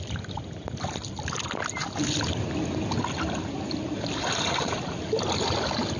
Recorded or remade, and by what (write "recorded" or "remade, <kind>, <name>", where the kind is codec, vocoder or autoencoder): recorded